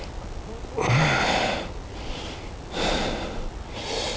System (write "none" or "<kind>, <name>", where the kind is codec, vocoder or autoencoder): none